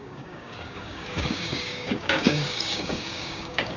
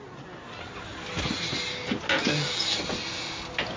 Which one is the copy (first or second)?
first